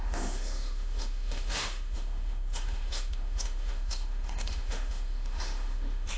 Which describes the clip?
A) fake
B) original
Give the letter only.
A